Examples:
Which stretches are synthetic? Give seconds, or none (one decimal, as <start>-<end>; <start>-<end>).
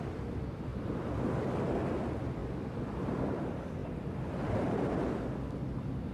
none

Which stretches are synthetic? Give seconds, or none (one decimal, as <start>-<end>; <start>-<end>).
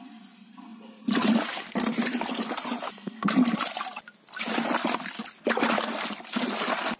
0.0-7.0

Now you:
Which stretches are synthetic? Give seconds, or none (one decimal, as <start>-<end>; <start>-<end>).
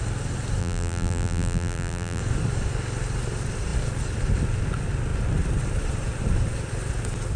0.6-2.2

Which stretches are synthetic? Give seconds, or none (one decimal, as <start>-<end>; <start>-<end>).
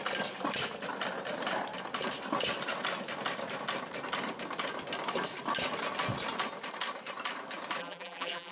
7.8-8.5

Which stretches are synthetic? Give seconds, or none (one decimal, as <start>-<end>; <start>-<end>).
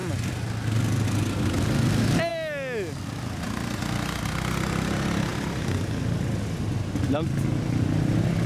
none